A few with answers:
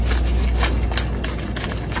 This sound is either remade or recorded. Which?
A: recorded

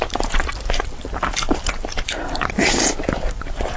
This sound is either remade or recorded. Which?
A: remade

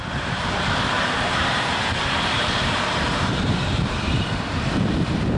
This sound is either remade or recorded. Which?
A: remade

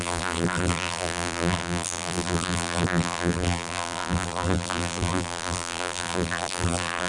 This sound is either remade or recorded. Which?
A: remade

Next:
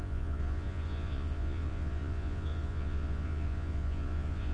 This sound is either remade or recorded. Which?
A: remade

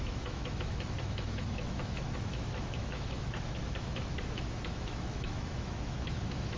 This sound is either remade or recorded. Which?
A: remade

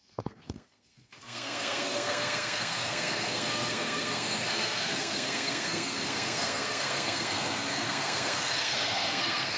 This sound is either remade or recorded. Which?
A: remade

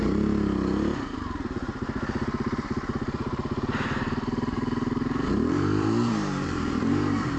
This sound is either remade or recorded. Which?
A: remade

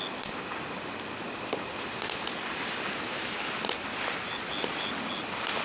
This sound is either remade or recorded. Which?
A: recorded